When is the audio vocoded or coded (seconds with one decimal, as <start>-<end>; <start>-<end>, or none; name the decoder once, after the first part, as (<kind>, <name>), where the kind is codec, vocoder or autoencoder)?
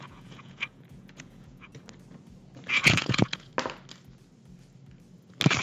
0.0-1.7 (vocoder, Vocos); 2.7-3.5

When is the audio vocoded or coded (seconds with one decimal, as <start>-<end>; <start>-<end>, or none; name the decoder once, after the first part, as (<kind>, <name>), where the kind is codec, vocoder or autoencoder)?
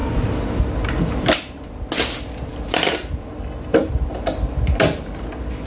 none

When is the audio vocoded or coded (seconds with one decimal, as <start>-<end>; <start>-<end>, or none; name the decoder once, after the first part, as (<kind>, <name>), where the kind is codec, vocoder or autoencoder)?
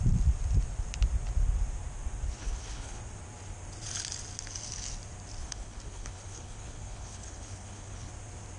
2.4-3.0 (codec, HILCodec); 5.4-8.1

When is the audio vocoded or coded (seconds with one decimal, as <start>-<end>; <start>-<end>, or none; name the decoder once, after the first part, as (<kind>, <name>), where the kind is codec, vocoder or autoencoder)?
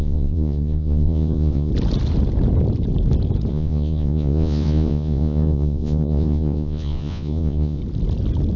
0.0-1.7 (vocoder, Vocos); 3.5-7.8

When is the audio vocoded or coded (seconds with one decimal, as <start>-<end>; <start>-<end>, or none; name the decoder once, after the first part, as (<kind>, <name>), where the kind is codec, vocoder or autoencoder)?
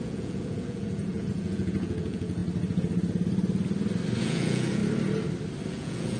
0.0-2.4 (vocoder, Vocos); 4.2-4.8; 5.7-6.2